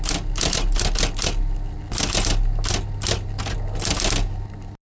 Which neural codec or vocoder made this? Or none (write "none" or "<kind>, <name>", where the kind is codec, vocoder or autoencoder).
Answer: none